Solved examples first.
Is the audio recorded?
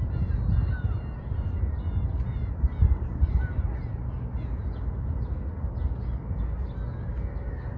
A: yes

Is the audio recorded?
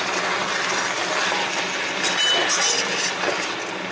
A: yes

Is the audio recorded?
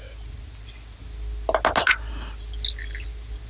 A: yes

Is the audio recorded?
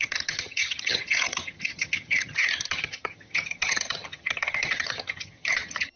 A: no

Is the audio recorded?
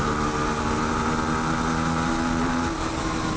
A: yes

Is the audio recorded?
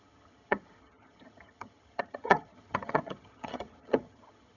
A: no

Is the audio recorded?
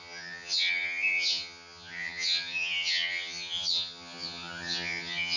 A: no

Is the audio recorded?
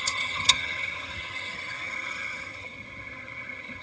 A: no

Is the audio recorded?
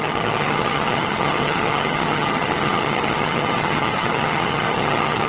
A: no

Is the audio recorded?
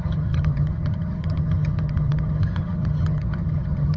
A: no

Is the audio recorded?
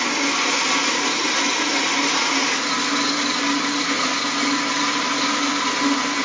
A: yes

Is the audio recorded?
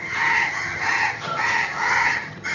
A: no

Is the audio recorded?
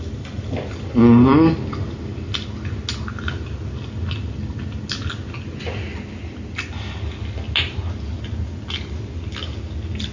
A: yes